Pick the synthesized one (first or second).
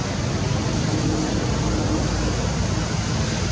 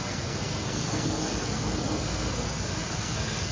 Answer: second